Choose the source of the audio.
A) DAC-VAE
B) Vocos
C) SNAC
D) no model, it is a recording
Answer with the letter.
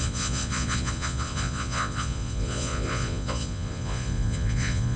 B